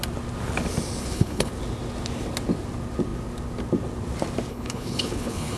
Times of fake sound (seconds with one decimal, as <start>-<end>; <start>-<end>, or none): 1.0-1.5; 4.5-5.6

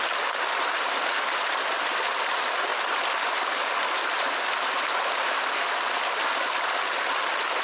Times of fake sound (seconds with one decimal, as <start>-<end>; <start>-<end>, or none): none

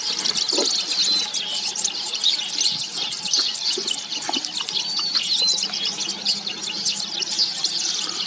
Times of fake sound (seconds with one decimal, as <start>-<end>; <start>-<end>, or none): none